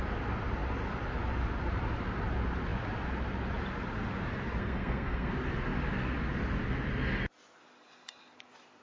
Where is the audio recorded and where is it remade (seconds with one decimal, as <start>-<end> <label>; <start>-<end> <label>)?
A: 0.0-4.6 recorded; 4.6-5.3 remade; 5.3-8.8 recorded